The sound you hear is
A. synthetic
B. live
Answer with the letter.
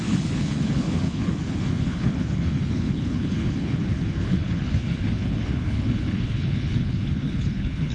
A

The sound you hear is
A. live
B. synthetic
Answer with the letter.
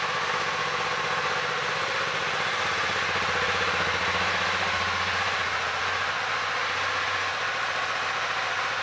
A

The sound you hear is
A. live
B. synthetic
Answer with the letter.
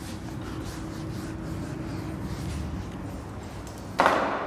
A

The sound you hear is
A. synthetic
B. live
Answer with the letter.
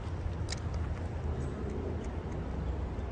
B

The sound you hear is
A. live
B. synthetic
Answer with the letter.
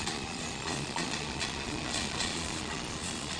B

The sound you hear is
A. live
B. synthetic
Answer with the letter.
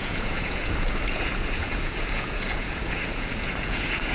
B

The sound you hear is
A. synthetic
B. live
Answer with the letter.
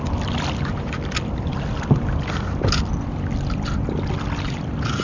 B